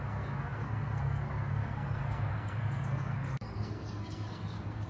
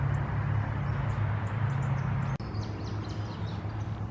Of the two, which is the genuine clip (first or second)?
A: second